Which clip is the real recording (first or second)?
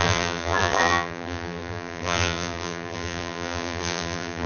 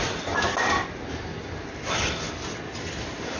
second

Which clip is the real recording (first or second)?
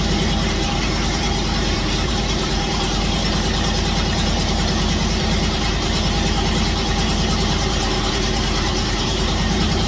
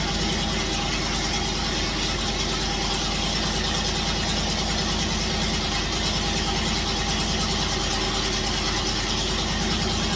second